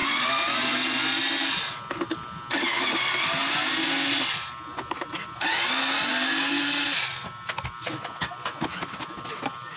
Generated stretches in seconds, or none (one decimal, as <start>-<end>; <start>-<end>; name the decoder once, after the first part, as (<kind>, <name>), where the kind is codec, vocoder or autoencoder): 8.7-9.8 (vocoder, BigVGAN v2)